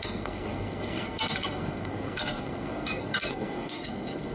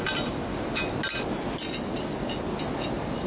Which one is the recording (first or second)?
second